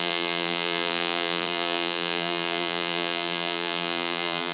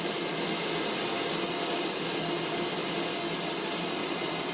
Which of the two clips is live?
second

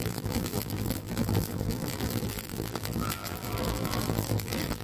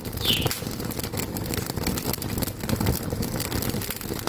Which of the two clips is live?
second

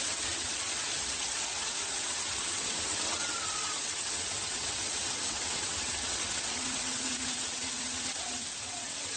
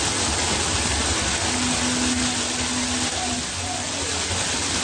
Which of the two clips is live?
second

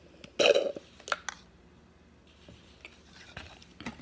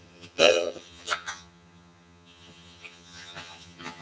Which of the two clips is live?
first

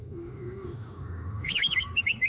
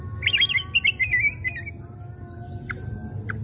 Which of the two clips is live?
second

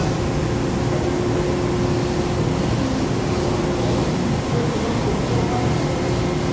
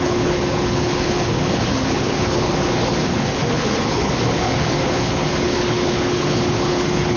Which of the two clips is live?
first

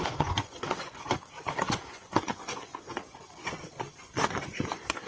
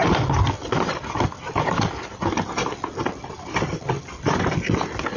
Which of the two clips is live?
second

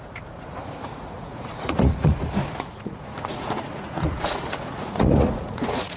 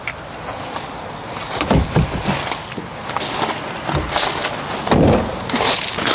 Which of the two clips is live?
second